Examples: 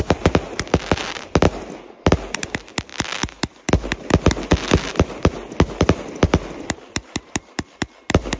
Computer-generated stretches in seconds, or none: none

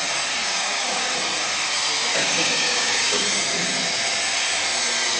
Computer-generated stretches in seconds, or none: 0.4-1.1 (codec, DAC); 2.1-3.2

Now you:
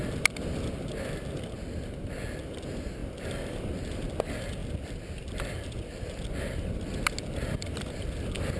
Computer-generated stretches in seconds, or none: none

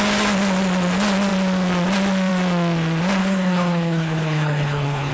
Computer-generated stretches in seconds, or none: 3.2-5.1 (codec, HILCodec)

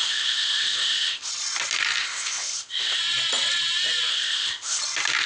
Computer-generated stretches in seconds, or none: 0.0-1.3 (codec, ZipCodec); 2.0-3.0; 4.1-4.8

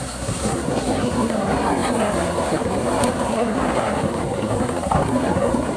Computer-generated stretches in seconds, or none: 0.0-5.8 (codec, SNAC)

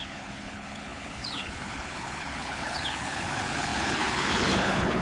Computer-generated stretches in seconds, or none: 0.0-5.0 (codec, HILCodec)